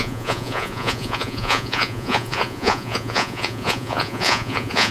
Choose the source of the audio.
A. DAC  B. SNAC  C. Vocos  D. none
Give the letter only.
C